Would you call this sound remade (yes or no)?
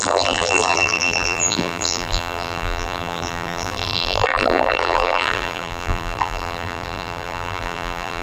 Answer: yes